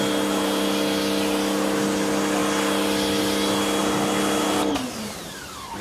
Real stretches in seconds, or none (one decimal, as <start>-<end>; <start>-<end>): 0.0-5.8